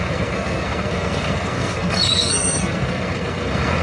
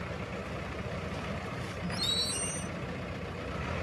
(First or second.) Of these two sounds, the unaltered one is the second